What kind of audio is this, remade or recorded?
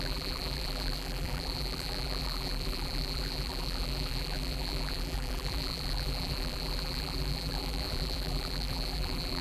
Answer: remade